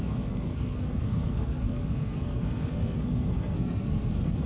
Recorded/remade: remade